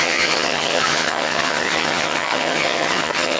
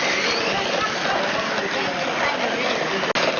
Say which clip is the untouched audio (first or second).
second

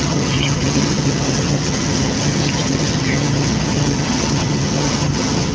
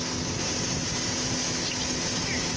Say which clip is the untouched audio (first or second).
second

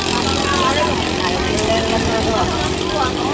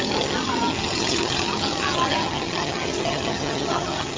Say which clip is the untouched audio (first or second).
first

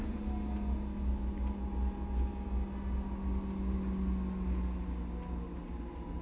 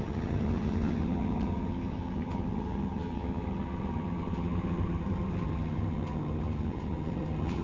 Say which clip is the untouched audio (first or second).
first